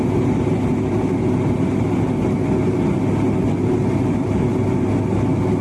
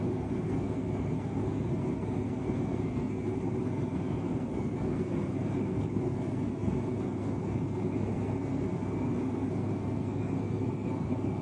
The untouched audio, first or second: first